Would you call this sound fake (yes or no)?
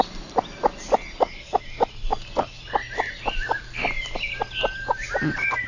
no